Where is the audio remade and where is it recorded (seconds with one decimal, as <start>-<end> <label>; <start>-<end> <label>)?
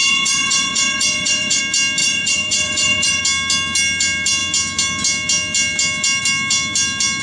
0.0-1.6 remade; 1.6-2.0 recorded; 2.0-3.2 remade; 3.2-7.2 recorded